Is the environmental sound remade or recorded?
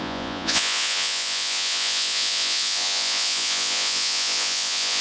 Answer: remade